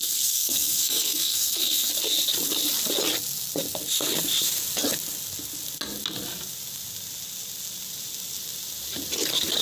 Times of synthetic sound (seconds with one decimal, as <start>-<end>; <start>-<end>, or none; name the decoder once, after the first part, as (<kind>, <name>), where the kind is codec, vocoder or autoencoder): 0.0-1.9 (codec, SNAC)